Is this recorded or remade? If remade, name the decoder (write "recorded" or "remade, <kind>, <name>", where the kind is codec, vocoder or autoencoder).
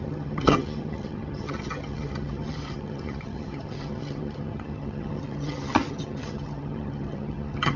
remade, vocoder, HiFi-GAN